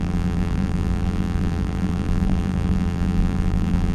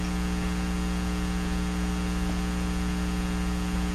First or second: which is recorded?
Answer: second